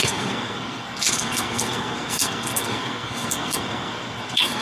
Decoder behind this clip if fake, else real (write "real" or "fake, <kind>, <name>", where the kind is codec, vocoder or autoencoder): fake, codec, SNAC